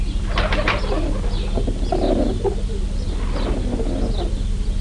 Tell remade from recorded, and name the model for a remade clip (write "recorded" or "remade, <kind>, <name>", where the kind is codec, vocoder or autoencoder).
recorded